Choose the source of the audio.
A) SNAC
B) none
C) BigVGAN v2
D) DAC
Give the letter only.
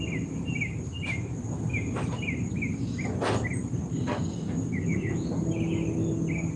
B